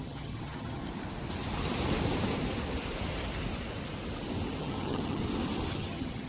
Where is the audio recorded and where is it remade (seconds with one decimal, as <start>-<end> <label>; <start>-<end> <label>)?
0.0-0.8 remade; 0.8-4.6 recorded; 4.6-5.2 remade; 5.2-5.7 recorded; 5.7-6.3 remade